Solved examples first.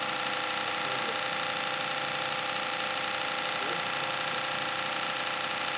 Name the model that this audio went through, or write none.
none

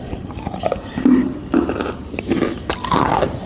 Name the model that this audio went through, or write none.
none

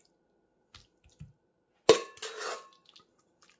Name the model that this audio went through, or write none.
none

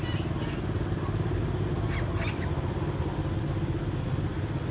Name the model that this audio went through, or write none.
none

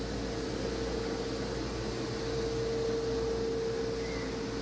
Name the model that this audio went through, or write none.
none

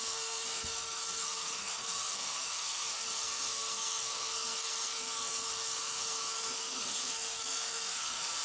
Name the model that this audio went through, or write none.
codec, SNAC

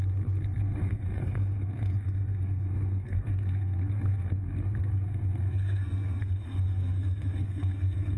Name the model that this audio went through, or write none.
codec, SNAC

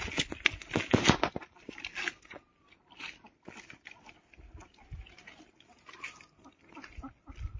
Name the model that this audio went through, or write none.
none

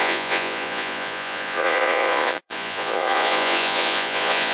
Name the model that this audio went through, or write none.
vocoder, Vocos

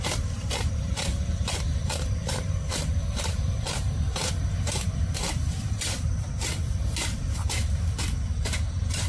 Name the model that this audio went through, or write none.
vocoder, BigVGAN v2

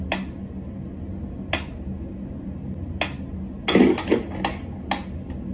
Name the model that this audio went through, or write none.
none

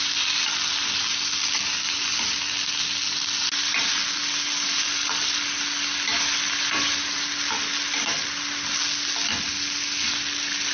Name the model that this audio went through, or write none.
none